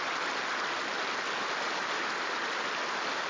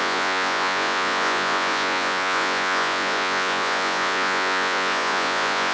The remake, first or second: second